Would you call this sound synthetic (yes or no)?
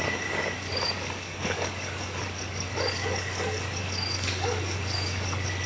yes